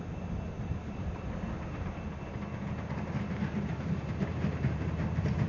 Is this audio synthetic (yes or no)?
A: yes